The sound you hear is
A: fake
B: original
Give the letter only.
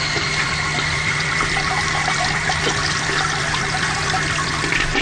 A